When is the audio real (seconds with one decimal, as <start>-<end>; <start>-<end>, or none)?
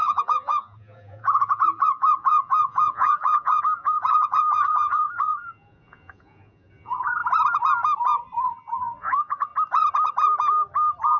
7.2-8.5; 9.5-11.2